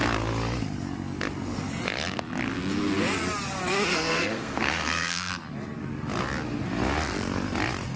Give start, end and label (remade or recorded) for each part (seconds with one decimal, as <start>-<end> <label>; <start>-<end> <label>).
0.0-3.9 recorded; 3.9-5.3 remade; 5.3-8.0 recorded